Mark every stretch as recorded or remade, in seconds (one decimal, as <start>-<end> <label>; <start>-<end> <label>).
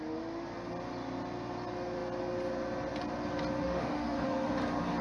0.0-3.6 recorded; 3.6-4.5 remade; 4.5-5.0 recorded